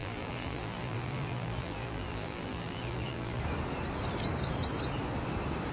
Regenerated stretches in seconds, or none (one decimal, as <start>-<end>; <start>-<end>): 0.0-3.4

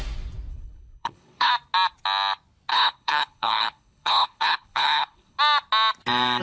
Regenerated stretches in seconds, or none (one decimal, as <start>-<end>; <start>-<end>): 0.5-1.5; 2.7-5.4

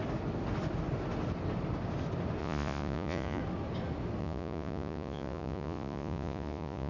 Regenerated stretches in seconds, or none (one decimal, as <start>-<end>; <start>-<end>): 2.4-3.4; 4.2-6.9

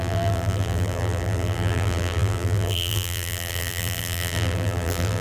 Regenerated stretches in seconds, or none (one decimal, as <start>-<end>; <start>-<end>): 0.0-5.2

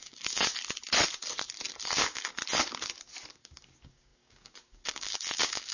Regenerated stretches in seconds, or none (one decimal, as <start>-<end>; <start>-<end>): 0.0-0.5; 2.0-2.4; 3.3-5.7

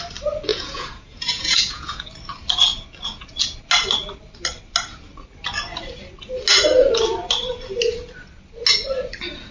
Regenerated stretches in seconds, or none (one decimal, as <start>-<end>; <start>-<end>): 0.5-2.1

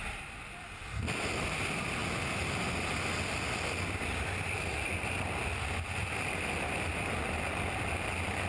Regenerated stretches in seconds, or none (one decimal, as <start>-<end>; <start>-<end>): none

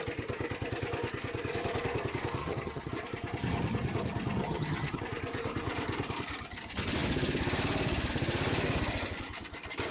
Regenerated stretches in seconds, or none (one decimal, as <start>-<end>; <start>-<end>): 2.4-2.9; 4.4-5.0